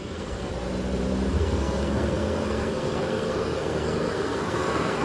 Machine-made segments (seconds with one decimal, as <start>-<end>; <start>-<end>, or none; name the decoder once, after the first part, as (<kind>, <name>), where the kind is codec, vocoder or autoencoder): 0.0-0.5 (codec, SNAC); 1.3-5.0